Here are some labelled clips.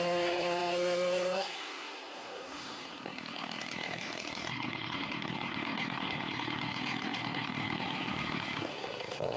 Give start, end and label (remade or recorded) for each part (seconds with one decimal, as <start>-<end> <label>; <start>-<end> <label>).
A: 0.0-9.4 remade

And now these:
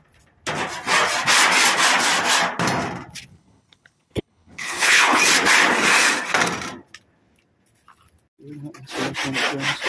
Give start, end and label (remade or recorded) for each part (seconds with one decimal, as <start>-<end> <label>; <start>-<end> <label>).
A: 0.0-3.3 recorded; 3.3-5.2 remade; 5.2-9.9 recorded

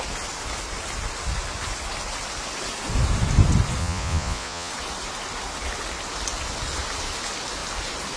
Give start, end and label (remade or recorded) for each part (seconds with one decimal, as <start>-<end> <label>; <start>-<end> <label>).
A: 0.0-3.8 recorded; 3.8-4.7 remade; 4.7-8.2 recorded

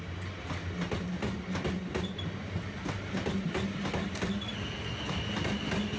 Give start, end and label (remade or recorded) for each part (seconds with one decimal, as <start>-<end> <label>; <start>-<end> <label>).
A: 0.0-6.0 recorded

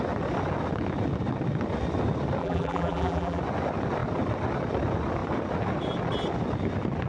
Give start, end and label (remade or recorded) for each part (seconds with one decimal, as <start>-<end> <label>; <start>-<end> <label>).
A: 0.0-2.4 recorded; 2.4-3.4 remade; 3.4-7.1 recorded

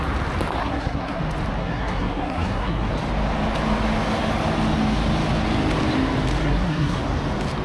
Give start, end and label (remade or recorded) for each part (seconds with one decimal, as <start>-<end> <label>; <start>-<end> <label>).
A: 0.0-0.6 recorded; 0.6-1.2 remade; 1.2-1.6 recorded; 1.6-2.9 remade; 2.9-6.4 recorded; 6.4-7.0 remade; 7.0-7.6 recorded